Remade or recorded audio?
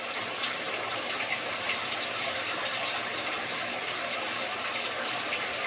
recorded